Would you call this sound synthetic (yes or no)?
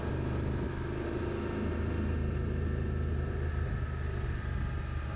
no